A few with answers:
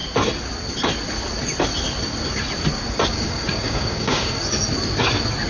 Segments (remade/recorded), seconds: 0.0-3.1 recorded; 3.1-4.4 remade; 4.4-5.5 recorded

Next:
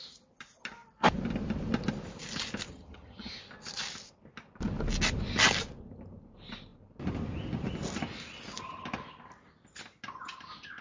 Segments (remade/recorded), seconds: 0.0-2.7 recorded; 2.7-3.3 remade; 3.3-10.8 recorded

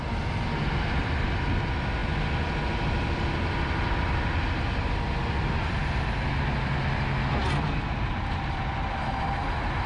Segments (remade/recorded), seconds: 0.0-9.9 recorded